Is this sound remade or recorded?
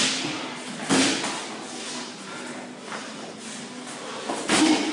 recorded